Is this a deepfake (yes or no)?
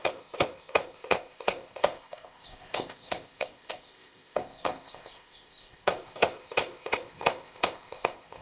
yes